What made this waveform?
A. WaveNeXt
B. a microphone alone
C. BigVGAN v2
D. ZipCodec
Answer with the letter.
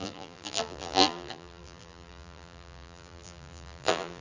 C